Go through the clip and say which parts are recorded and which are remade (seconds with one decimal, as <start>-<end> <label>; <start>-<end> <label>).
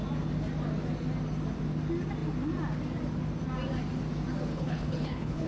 0.0-4.5 recorded; 4.5-5.5 remade